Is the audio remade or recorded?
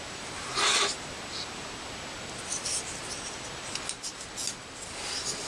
recorded